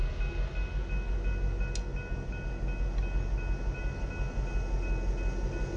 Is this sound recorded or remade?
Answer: recorded